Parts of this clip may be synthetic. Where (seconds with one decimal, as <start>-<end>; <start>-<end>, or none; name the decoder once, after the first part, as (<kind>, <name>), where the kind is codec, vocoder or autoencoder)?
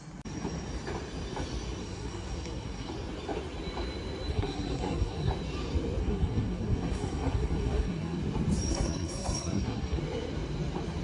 1.8-2.9 (codec, SNAC); 4.3-5.3; 6.0-8.2; 8.7-10.0